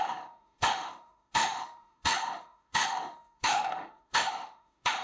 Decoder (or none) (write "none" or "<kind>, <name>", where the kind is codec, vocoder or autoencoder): autoencoder, DAC-VAE